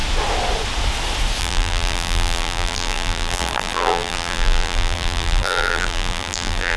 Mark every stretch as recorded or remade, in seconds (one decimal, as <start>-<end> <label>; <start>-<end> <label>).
0.0-1.4 recorded; 1.4-6.8 remade